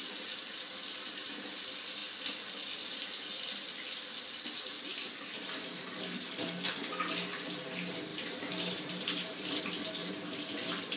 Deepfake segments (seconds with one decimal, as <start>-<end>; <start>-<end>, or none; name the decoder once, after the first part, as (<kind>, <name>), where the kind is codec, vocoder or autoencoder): 8.1-9.6 (vocoder, BigVGAN v2); 10.0-10.6